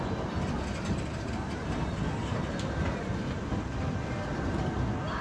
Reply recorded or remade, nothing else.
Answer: recorded